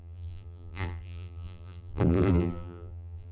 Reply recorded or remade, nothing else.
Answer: remade